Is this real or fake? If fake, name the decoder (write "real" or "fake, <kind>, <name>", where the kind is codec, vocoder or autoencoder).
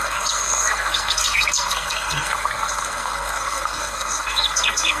fake, codec, SNAC